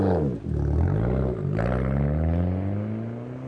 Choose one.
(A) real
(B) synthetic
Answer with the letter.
A